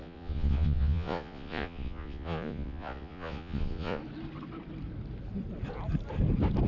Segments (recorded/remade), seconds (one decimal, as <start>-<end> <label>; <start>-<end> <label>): 0.0-4.0 remade; 4.0-6.7 recorded